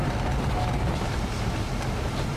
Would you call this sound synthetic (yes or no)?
no